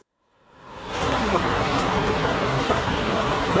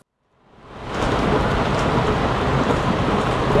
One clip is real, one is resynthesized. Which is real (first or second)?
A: second